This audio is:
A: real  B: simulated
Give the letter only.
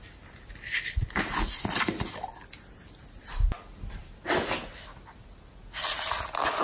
A